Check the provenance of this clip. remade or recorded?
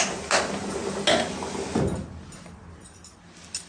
recorded